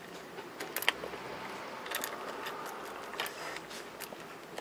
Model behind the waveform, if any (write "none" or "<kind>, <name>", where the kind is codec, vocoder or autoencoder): none